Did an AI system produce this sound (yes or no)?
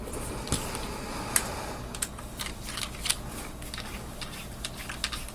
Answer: no